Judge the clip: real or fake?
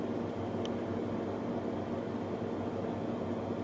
real